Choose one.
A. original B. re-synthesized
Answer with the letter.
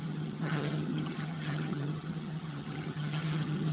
B